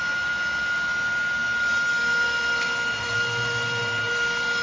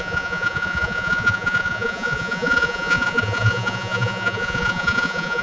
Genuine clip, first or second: first